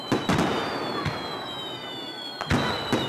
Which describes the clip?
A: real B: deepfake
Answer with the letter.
A